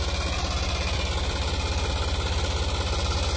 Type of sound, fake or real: real